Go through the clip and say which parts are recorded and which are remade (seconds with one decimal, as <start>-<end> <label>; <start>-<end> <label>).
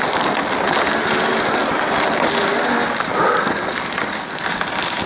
0.0-5.1 recorded